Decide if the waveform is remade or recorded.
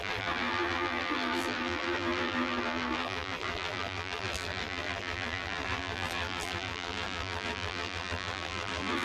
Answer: remade